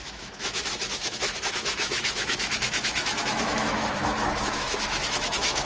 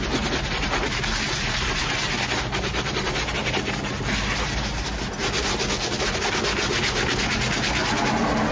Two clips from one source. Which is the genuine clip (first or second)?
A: second